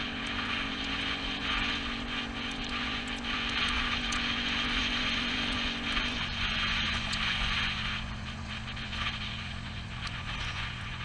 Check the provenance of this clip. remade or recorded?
remade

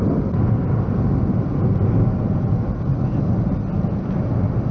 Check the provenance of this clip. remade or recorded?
recorded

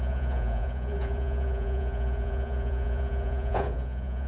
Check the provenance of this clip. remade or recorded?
remade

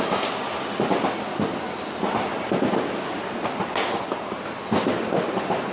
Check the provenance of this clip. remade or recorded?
recorded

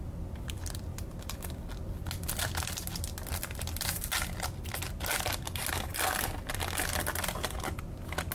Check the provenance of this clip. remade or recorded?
recorded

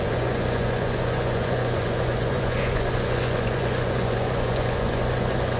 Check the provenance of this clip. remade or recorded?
remade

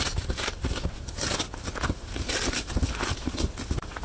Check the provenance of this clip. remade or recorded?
recorded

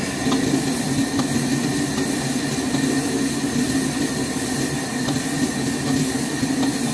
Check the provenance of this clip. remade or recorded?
recorded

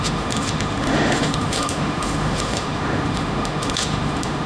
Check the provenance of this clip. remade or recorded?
remade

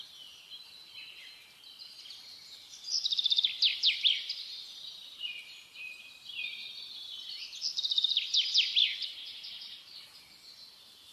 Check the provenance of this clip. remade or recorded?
recorded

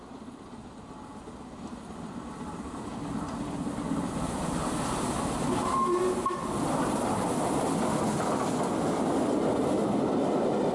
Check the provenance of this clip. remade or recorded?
recorded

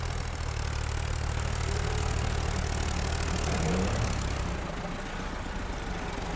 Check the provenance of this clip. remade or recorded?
recorded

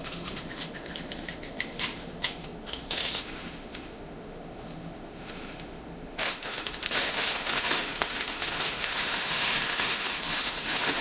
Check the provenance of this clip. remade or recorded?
remade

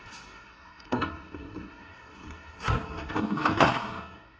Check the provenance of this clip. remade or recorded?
remade